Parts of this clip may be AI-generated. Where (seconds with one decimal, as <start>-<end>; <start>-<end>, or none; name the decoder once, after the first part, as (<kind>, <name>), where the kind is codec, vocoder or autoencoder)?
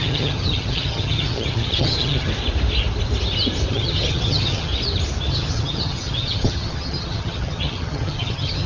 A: 0.0-2.3 (vocoder, HiFi-GAN); 3.7-4.7; 5.3-8.7